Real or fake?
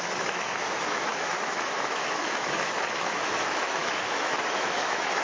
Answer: fake